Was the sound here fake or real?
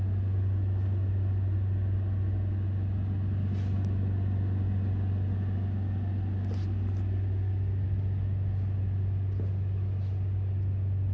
real